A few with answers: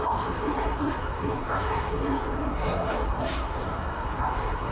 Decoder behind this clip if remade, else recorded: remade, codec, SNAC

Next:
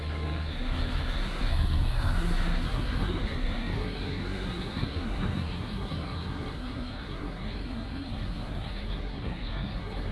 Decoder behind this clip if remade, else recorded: remade, codec, SNAC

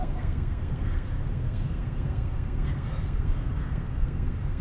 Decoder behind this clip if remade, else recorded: remade, codec, SNAC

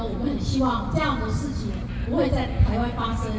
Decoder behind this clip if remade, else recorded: recorded